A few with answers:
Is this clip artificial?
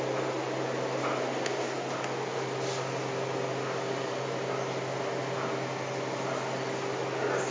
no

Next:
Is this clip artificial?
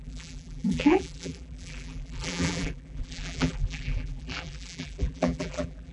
yes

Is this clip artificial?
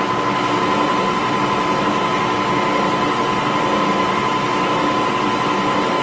no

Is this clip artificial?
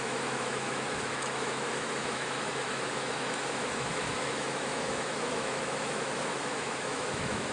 yes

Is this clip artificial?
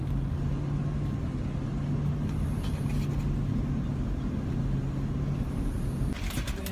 no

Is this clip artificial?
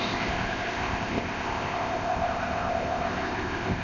yes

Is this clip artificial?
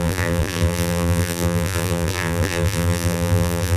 yes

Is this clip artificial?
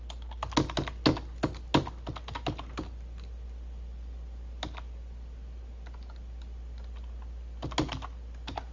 no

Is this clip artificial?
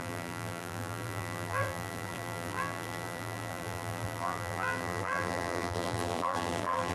yes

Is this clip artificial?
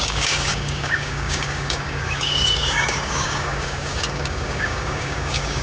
yes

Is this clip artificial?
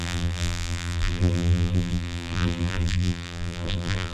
yes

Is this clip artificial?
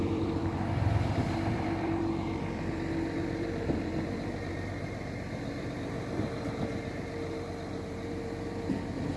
yes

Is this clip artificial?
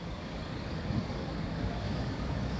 yes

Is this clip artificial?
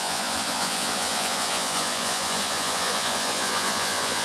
yes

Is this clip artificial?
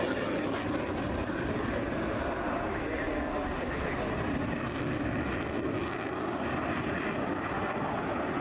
no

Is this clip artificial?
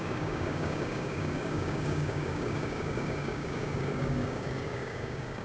yes